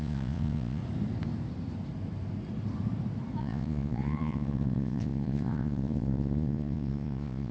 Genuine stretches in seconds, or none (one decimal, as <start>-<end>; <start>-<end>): 0.8-3.4